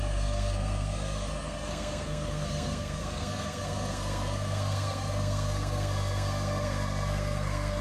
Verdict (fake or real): fake